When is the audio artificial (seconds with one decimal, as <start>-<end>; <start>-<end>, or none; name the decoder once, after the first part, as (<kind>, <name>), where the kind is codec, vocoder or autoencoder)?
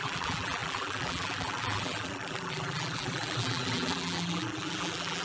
0.0-5.2 (vocoder, BigVGAN v2)